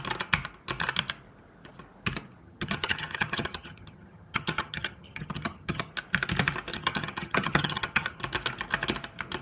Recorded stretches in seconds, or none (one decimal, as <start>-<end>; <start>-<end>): 0.0-2.4; 5.9-6.7; 8.2-9.4

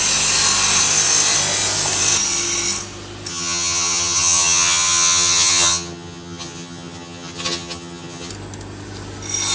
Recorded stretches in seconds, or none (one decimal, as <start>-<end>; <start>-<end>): 0.0-3.3; 8.3-9.5

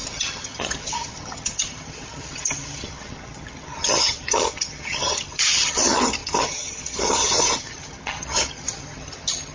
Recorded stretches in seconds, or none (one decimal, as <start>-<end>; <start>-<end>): none